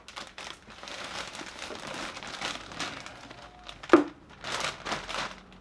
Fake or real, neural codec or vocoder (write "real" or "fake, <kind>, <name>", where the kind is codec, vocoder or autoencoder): real